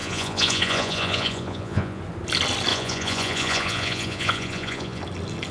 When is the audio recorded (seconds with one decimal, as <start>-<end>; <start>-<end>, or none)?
2.0-2.7; 5.0-5.5